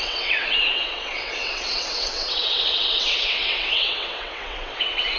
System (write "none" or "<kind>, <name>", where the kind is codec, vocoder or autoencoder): vocoder, WaveNeXt